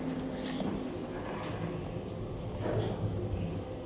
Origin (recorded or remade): recorded